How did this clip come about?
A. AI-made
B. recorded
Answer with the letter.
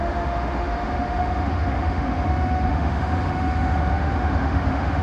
A